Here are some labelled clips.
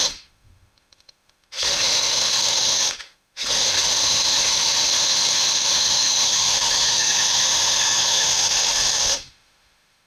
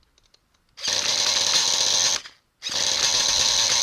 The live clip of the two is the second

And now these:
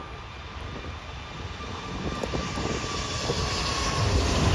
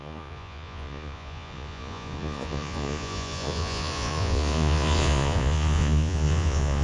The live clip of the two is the first